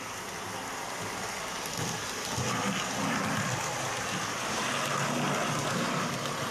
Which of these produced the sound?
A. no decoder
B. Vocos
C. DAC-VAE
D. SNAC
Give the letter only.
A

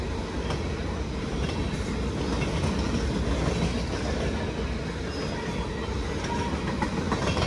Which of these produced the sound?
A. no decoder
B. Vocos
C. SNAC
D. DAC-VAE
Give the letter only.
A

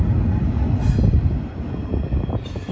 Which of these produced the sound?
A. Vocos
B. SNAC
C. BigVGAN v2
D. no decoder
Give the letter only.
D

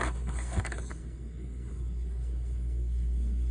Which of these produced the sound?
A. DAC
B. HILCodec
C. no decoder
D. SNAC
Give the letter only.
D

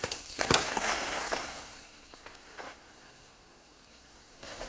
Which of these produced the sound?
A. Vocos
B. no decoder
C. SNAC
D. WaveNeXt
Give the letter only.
C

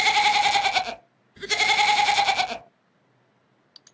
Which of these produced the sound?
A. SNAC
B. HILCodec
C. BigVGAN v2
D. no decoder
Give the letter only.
D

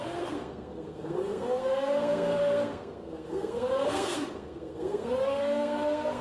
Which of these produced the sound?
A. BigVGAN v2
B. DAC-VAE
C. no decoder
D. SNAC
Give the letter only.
D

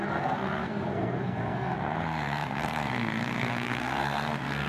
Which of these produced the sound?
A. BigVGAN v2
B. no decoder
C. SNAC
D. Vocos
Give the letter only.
C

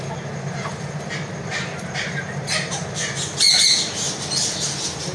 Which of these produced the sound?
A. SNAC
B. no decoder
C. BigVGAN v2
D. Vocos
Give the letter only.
B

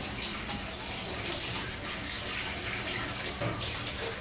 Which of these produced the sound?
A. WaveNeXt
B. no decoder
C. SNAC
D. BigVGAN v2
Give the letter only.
B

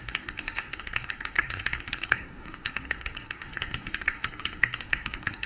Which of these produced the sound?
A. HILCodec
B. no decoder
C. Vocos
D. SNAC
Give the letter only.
D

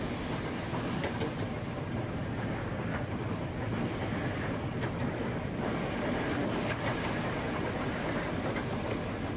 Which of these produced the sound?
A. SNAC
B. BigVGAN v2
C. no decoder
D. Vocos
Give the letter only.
C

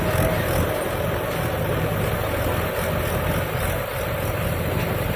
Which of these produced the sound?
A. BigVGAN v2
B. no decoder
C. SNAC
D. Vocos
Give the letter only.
B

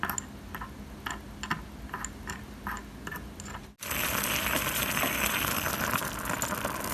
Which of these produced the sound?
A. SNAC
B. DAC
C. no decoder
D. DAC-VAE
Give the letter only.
C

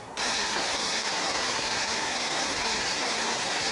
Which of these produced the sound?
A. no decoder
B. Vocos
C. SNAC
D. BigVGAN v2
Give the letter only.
C